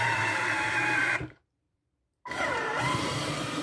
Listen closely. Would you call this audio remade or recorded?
remade